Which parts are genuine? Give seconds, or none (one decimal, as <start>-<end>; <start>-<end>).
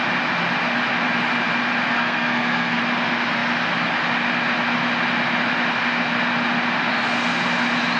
0.0-1.9; 2.8-8.0